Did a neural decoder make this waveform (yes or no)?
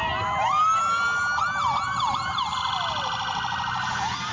no